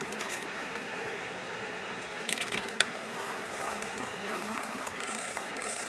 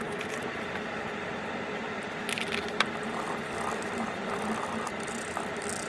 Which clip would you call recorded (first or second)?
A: second